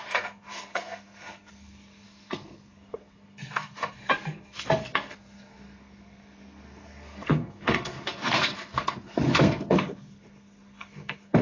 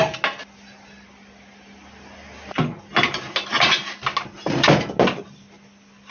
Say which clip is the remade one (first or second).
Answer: first